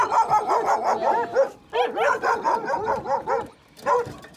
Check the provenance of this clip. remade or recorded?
recorded